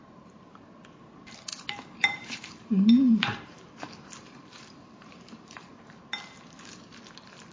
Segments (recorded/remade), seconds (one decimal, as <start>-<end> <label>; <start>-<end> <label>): 0.0-1.5 recorded; 1.5-6.0 remade; 6.0-7.5 recorded